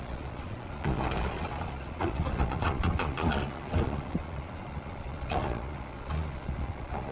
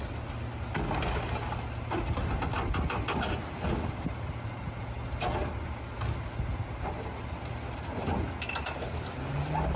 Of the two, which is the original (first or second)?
second